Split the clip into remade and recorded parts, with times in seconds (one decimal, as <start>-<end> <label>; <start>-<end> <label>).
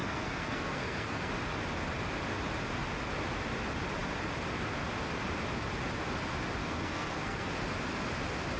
0.0-1.3 remade; 1.3-6.6 recorded; 6.6-7.5 remade; 7.5-8.6 recorded